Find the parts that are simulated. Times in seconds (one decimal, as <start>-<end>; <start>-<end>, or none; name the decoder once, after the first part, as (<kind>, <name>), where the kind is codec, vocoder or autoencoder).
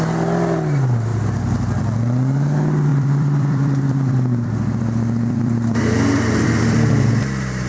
2.9-7.1 (vocoder, BigVGAN v2)